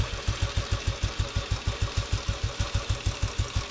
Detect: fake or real real